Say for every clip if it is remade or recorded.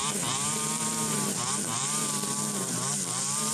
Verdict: remade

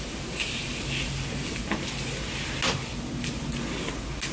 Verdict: recorded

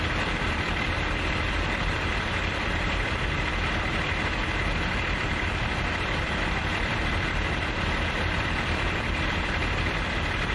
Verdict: remade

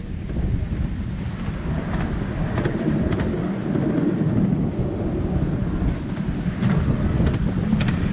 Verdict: recorded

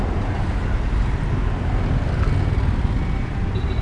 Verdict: recorded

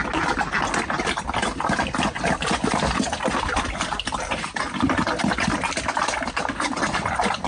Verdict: recorded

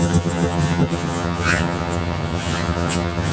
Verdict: remade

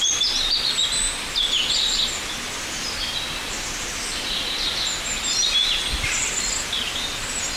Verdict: recorded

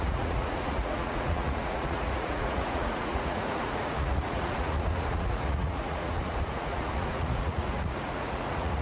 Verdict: remade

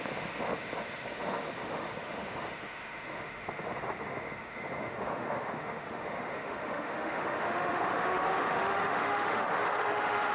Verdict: remade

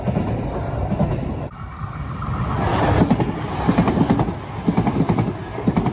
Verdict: recorded